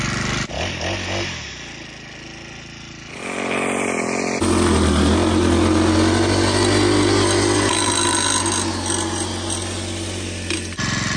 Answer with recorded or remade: recorded